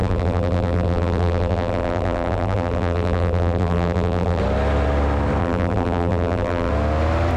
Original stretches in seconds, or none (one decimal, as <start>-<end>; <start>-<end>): 4.4-5.4; 6.7-7.4